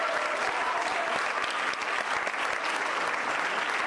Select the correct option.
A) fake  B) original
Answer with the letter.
B